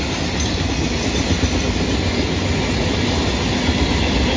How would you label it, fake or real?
real